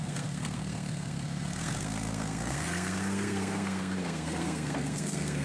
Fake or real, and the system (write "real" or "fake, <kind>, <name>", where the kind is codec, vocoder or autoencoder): fake, codec, SNAC